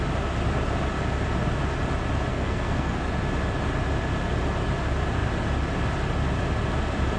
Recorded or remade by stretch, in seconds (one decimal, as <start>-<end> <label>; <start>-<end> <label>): 0.0-2.3 recorded; 2.3-3.0 remade; 3.0-7.2 recorded